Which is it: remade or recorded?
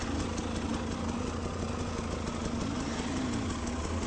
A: recorded